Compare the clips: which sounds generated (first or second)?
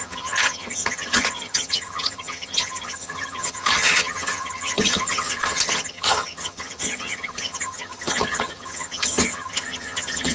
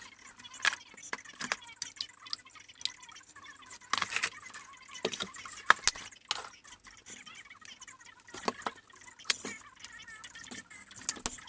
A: first